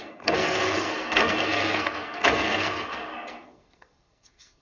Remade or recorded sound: remade